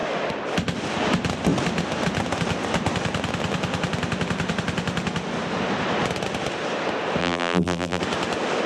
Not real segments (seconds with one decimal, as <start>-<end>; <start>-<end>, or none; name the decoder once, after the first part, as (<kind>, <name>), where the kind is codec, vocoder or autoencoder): 7.2-8.0 (vocoder, BigVGAN v2)

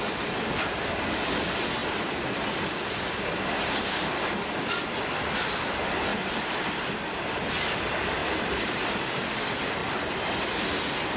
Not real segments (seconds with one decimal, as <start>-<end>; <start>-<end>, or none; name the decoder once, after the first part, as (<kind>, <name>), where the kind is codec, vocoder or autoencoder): 6.1-6.7 (vocoder, BigVGAN v2); 8.2-9.3

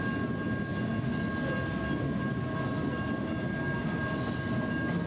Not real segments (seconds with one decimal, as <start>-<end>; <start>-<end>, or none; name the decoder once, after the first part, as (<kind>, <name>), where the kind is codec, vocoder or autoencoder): none

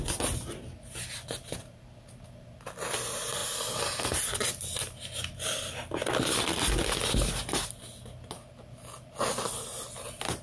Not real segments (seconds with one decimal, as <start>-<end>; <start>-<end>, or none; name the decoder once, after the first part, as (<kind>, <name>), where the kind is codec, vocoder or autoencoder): none

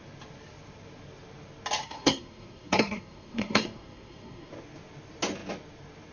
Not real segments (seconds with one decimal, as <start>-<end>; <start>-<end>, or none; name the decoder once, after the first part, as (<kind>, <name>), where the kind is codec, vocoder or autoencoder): 1.8-4.5 (codec, SNAC)

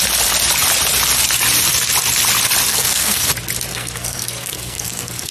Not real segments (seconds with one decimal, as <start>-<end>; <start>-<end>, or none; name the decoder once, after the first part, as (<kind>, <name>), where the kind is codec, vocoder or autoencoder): 2.7-3.3 (codec, SNAC); 3.7-5.3

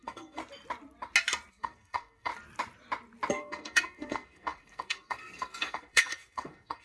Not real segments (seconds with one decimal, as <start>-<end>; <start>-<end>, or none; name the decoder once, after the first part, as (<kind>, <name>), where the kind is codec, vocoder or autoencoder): 0.0-0.4 (codec, SNAC); 1.5-2.3; 3.3-6.8